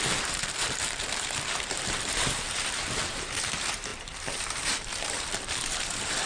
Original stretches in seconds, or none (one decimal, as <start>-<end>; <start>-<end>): none